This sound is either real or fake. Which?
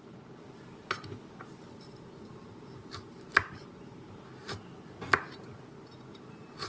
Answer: real